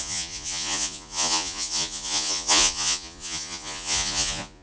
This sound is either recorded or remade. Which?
remade